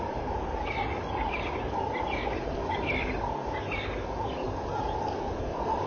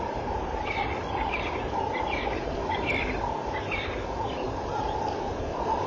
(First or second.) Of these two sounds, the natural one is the first